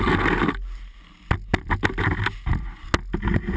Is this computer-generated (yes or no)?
no